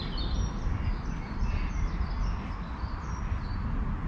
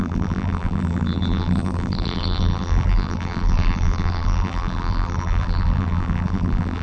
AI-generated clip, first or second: second